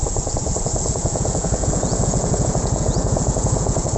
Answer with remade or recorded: remade